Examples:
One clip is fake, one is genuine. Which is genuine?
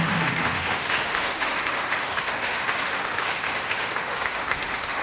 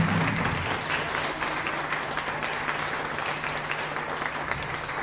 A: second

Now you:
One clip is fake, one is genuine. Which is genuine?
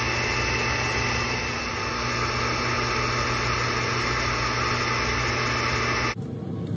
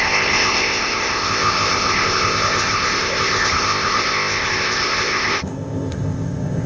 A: first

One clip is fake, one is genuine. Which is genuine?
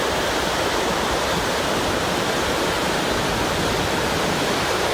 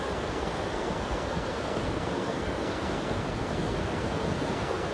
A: first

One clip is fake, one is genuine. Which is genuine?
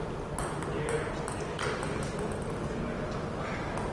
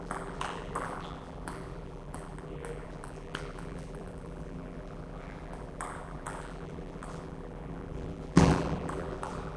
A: first